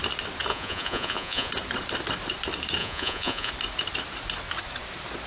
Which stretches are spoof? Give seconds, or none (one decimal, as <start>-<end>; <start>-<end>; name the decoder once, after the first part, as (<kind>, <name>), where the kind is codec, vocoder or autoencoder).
0.5-1.5 (vocoder, Vocos); 2.8-3.5